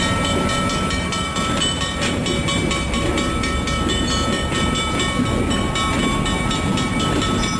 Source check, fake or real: fake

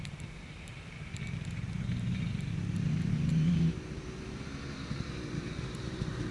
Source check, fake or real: fake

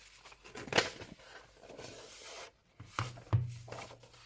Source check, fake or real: real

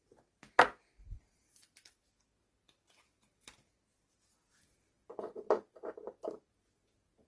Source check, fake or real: real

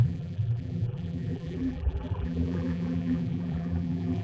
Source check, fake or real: fake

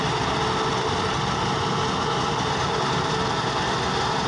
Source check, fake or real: real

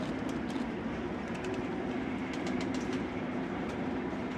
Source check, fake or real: fake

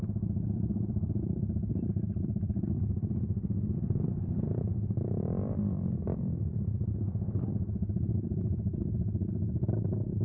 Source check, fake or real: fake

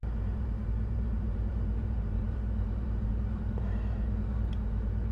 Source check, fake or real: fake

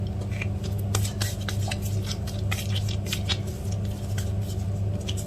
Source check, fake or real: real